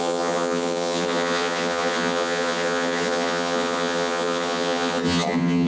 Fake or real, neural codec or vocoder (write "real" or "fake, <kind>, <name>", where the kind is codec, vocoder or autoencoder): fake, vocoder, HiFi-GAN